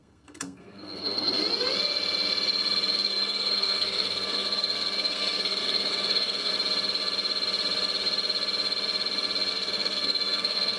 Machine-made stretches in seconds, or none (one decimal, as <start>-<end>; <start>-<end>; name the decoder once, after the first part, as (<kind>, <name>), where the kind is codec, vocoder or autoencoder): 0.0-1.4 (codec, SNAC); 2.9-6.5; 9.5-10.8

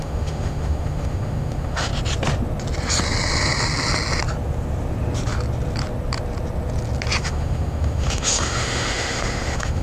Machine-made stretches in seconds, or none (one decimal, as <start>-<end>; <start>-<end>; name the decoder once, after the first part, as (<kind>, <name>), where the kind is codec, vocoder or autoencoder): 0.0-1.9 (autoencoder, DAC-VAE); 7.2-9.8

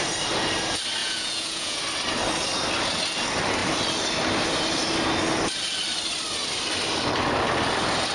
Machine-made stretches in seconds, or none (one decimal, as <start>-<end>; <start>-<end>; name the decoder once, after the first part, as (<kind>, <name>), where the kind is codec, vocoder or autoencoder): 1.0-1.8 (vocoder, Vocos)

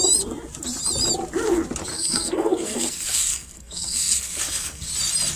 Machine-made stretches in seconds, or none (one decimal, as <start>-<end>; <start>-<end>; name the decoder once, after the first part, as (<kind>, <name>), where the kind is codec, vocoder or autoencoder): 1.9-4.9 (codec, SNAC)

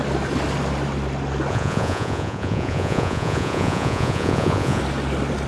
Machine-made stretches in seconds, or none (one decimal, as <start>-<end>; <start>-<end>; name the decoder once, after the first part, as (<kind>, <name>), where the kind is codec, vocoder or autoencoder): 1.5-4.8 (vocoder, Vocos)